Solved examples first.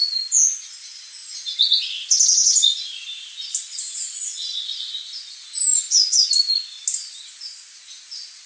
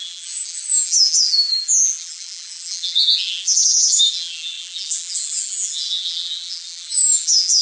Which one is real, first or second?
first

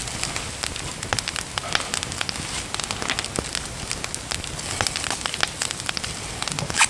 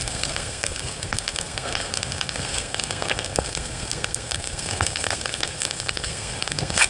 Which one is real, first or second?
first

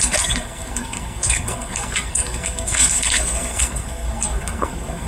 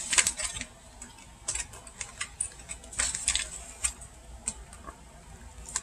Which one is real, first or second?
second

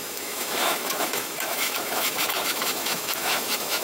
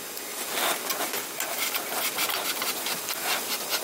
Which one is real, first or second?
second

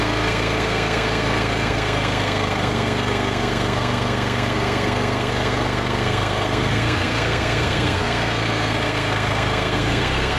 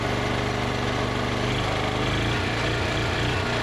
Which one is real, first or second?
second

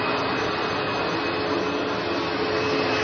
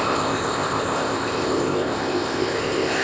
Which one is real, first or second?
first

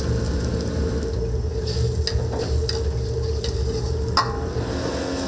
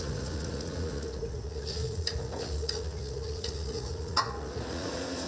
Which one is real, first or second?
first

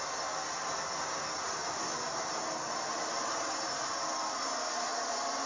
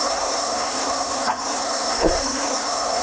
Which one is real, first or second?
first